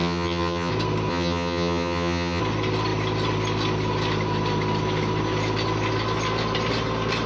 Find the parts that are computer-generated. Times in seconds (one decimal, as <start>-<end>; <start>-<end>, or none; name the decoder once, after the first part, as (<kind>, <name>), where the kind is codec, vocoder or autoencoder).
0.0-0.7 (vocoder, HiFi-GAN); 1.1-2.4